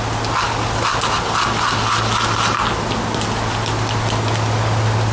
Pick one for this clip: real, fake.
real